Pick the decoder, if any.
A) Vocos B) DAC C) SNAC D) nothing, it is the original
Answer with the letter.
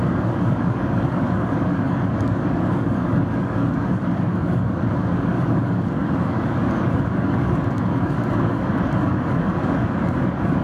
B